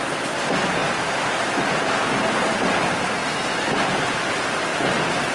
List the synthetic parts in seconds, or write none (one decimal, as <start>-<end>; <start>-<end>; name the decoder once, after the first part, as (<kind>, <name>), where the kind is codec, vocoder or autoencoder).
none